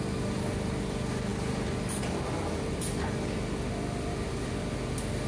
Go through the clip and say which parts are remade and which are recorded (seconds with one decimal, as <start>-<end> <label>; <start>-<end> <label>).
0.0-5.3 recorded